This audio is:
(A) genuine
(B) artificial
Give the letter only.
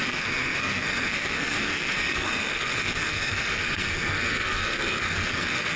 B